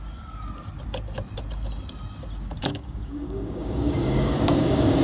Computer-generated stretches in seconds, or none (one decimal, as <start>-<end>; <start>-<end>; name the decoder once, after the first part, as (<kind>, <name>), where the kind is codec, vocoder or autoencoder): 2.6-5.0 (codec, DAC)